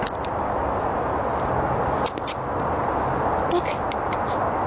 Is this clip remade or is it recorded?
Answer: recorded